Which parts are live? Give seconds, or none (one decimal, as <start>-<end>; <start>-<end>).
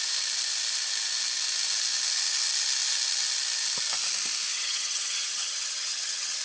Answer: 0.0-4.5